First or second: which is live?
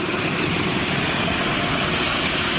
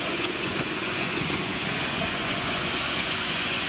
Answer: first